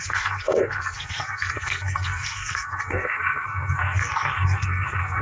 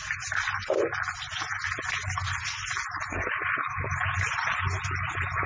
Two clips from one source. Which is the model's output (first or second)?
first